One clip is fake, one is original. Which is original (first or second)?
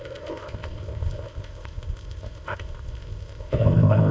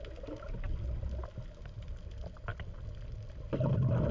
second